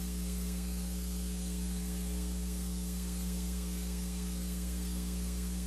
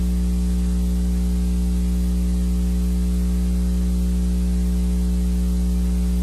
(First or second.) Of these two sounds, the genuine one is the second